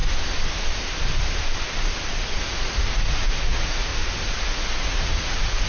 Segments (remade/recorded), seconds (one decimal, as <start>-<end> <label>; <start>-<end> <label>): 0.0-2.4 recorded; 2.4-3.9 remade; 3.9-4.4 recorded; 4.4-5.7 remade